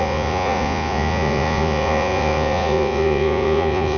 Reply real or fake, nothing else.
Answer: fake